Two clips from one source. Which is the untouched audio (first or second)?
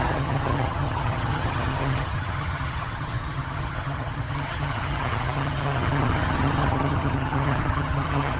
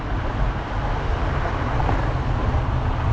second